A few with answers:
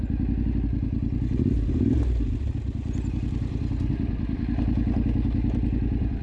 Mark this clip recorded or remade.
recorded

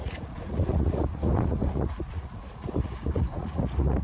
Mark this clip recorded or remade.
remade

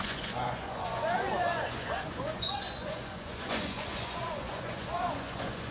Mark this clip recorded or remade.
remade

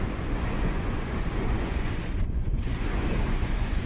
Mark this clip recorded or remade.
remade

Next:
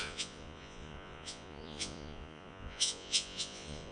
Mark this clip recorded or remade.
remade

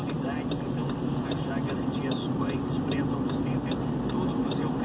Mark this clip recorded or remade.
recorded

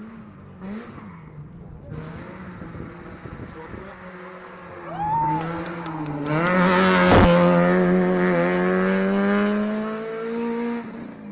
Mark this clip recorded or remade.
recorded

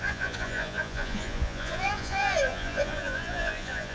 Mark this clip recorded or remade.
remade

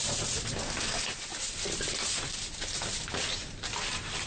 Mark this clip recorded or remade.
recorded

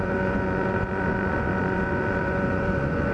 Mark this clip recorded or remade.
remade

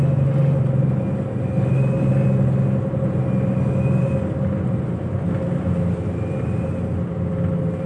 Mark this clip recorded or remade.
recorded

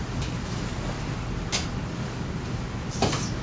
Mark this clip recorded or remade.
recorded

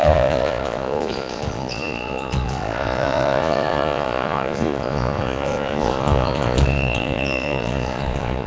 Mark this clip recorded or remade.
remade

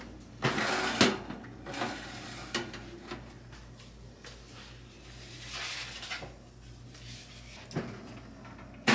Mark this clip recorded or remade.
recorded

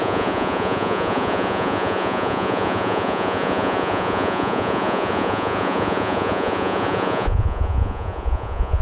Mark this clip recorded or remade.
remade